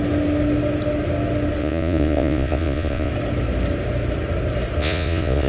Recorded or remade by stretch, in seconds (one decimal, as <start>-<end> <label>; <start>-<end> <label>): 0.0-1.6 recorded; 1.6-3.1 remade; 3.1-4.8 recorded; 4.8-5.5 remade